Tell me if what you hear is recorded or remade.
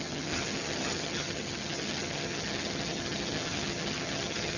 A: remade